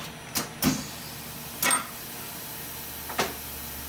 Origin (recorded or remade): recorded